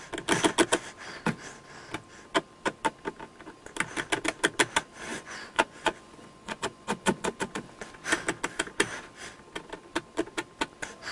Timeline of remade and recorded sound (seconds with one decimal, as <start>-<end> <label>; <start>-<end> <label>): 0.0-5.1 recorded; 5.1-7.7 remade; 7.7-11.1 recorded